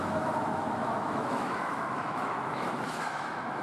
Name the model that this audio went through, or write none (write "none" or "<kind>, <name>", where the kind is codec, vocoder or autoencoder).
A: autoencoder, DAC-VAE